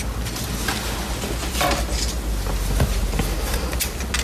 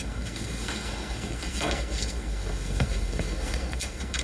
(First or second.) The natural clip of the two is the first